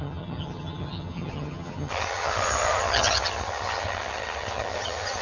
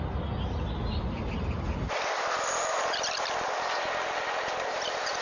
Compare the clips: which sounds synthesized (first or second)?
first